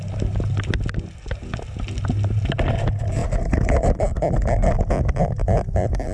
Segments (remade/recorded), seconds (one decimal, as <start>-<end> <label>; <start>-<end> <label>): 0.0-6.1 recorded